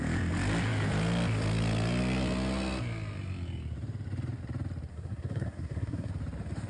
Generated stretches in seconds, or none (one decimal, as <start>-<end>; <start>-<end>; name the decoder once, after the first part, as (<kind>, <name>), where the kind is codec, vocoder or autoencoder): 4.9-6.1 (codec, SNAC)